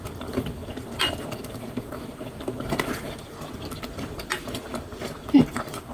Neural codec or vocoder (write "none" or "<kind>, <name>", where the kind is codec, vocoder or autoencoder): none